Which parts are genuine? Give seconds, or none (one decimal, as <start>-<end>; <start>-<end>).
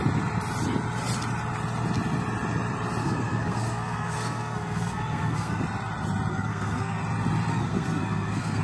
0.0-3.0; 5.6-6.3; 7.0-7.5